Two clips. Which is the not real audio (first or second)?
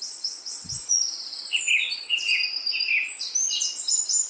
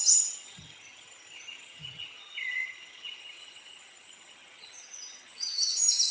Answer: second